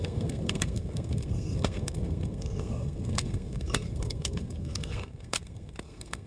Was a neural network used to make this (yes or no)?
yes